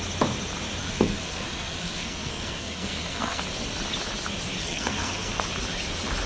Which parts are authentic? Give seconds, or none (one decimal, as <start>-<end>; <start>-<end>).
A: 0.0-0.8; 3.4-4.6; 5.4-6.3